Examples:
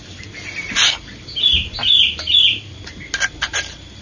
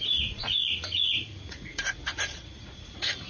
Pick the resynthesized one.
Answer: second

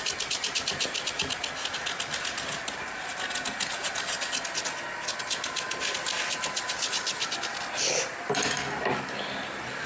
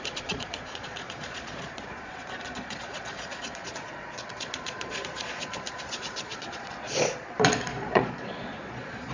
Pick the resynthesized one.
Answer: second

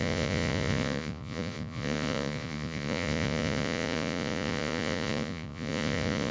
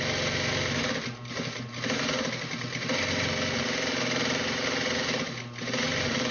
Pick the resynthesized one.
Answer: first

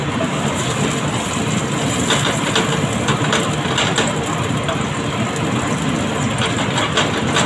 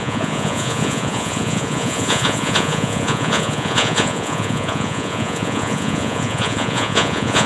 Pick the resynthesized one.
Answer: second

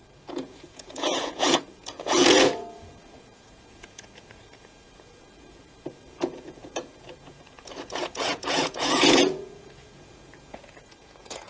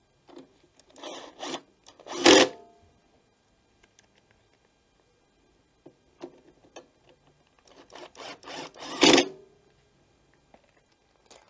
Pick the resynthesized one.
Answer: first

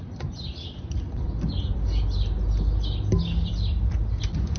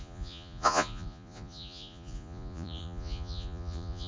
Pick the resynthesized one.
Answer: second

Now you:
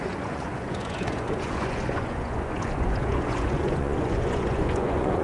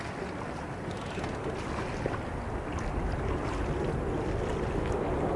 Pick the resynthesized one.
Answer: first